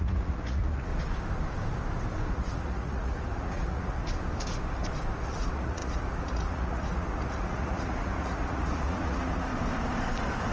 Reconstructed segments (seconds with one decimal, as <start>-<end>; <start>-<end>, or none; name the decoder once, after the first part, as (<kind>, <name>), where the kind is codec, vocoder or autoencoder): 0.0-0.9 (vocoder, Vocos); 2.3-4.0; 5.2-9.5